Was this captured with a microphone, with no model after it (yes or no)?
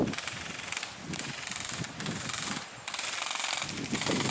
yes